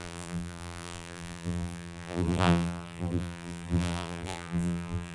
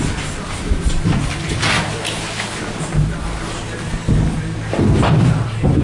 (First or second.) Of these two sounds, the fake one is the first